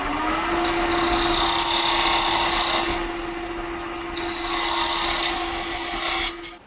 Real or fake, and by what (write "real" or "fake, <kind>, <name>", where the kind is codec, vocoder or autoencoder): real